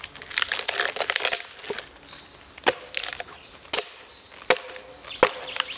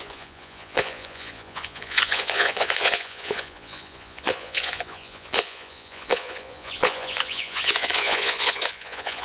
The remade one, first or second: second